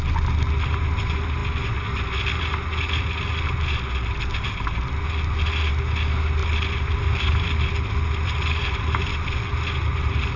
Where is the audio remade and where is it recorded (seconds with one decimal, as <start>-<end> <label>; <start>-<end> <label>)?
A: 0.0-6.4 recorded; 6.4-9.5 remade; 9.5-10.4 recorded